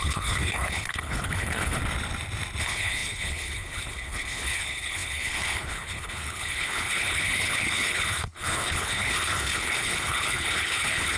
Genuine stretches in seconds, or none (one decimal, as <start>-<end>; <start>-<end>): 1.8-2.6